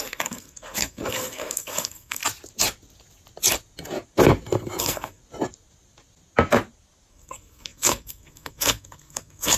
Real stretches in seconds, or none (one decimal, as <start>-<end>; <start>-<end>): 2.2-4.8; 5.2-7.1